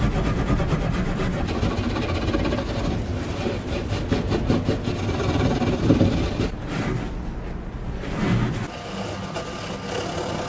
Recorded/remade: recorded